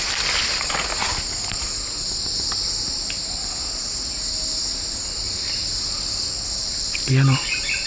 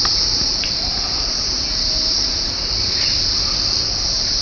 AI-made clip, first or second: second